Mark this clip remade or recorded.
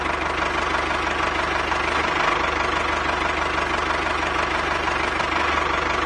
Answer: recorded